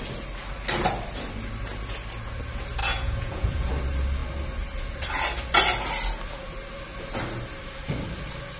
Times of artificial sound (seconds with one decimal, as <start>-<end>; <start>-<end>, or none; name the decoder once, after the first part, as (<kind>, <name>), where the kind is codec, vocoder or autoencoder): 2.8-3.7 (vocoder, Vocos)